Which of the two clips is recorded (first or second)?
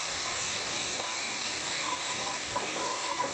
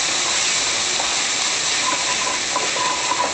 second